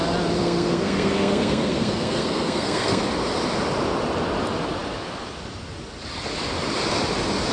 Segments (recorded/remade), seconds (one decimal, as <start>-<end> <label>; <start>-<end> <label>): 0.0-0.4 recorded; 0.4-3.0 remade; 3.0-7.5 recorded